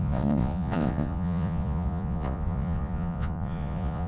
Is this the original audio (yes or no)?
no